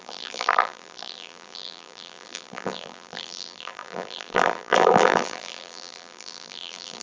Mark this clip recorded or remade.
remade